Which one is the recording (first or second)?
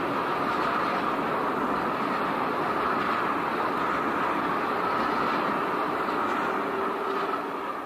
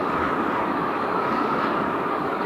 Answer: first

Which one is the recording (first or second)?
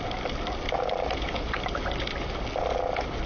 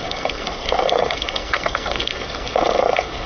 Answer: first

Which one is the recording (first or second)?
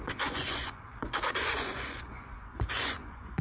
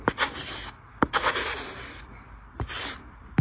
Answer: second